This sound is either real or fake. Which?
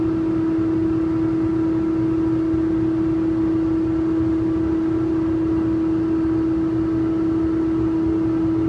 real